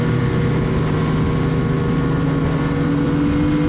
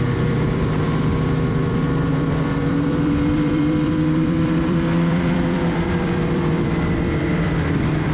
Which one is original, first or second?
first